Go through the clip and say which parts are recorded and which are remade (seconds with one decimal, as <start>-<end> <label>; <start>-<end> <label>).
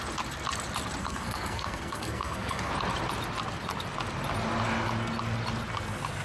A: 0.0-1.0 recorded; 1.0-2.7 remade; 2.7-6.2 recorded